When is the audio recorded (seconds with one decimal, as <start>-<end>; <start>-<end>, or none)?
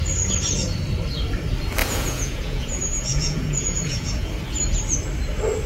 0.0-1.8; 4.3-5.7